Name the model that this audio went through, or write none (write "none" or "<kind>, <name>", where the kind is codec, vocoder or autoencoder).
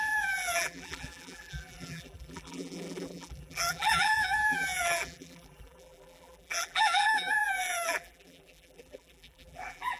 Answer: vocoder, BigVGAN v2